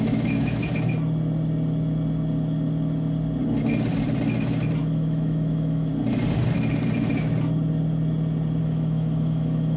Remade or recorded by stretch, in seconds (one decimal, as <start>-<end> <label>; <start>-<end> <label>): 0.0-0.6 remade; 0.6-4.8 recorded; 4.8-5.9 remade; 5.9-8.6 recorded; 8.6-9.8 remade